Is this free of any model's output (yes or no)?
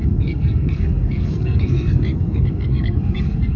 no